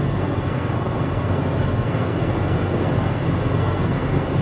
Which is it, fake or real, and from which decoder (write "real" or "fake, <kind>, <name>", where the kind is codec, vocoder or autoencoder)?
fake, codec, SNAC